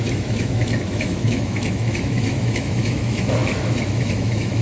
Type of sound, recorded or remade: remade